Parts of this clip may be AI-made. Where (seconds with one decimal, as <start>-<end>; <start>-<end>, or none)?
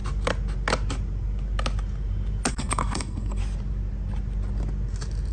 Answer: 2.5-3.4